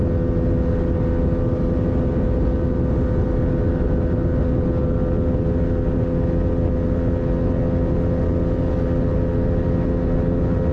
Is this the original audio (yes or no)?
yes